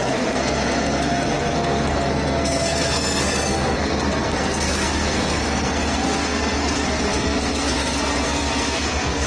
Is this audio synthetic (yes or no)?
yes